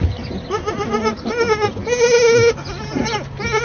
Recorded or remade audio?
recorded